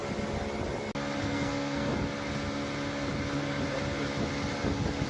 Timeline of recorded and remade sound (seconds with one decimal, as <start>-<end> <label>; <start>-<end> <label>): 0.0-1.2 recorded; 1.2-1.9 remade; 1.9-5.1 recorded